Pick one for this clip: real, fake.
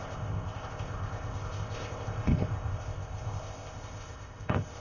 fake